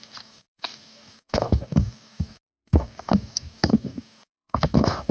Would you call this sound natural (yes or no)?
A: no